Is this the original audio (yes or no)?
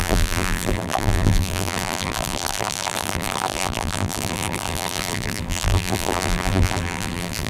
no